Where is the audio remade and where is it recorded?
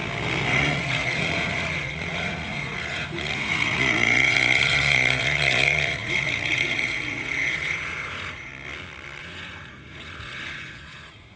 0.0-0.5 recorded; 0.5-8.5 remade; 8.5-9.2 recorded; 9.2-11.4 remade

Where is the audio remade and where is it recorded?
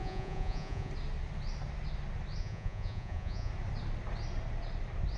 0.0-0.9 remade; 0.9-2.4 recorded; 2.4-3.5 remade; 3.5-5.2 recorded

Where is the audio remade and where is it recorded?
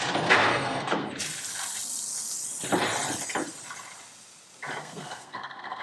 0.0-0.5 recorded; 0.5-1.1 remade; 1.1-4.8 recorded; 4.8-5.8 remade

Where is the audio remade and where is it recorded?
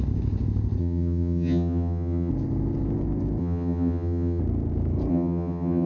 0.0-0.8 recorded; 0.8-2.3 remade; 2.3-3.4 recorded; 3.4-4.4 remade; 4.4-5.1 recorded; 5.1-5.9 remade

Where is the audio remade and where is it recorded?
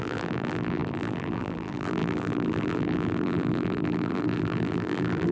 0.0-5.3 remade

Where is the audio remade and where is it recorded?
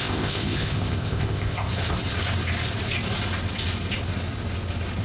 0.0-1.7 remade; 1.7-5.0 recorded